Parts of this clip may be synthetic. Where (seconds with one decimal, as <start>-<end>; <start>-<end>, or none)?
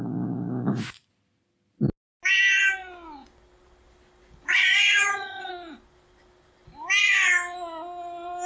4.5-5.5